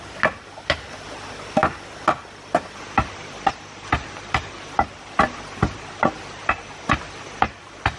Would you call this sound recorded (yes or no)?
yes